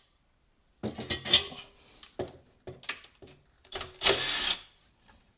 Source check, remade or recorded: recorded